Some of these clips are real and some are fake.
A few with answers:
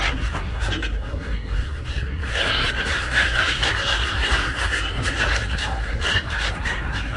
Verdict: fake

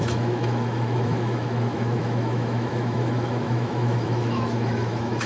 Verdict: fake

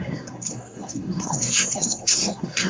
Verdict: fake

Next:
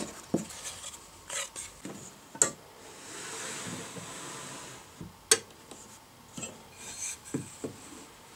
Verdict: real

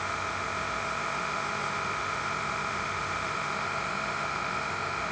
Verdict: fake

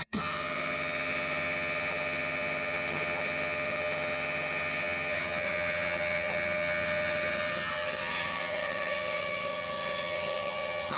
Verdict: fake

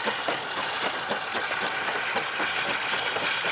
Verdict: real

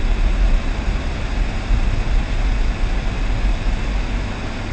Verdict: real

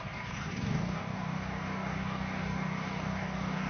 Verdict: fake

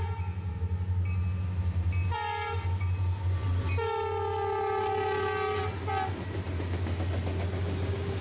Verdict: real